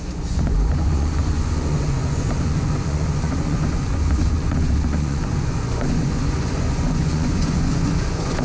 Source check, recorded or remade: remade